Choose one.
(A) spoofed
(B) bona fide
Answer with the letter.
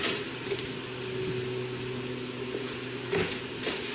B